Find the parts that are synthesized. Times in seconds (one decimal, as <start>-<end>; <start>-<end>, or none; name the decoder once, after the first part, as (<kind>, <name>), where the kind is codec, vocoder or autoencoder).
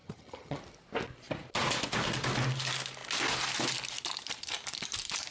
0.0-0.6 (vocoder, HiFi-GAN)